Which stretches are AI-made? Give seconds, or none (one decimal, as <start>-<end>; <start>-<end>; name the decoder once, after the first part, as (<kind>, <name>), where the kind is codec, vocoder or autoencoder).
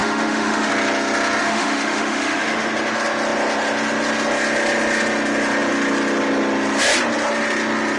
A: 0.0-0.7 (autoencoder, DAC-VAE); 1.4-2.7